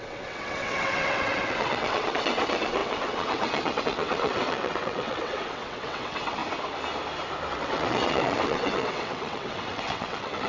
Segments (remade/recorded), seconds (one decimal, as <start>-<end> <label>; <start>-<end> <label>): 0.0-6.4 remade; 6.4-7.5 recorded; 7.5-10.5 remade